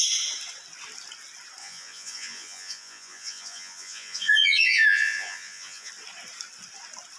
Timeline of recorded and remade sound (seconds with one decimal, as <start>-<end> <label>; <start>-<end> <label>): 0.0-1.6 recorded; 1.6-5.9 remade; 5.9-7.2 recorded